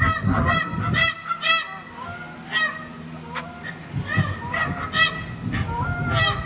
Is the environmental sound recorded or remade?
recorded